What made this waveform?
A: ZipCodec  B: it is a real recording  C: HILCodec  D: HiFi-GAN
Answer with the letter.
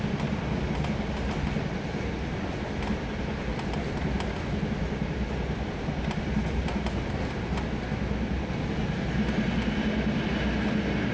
B